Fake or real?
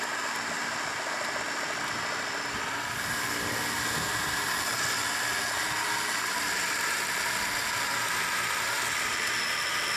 real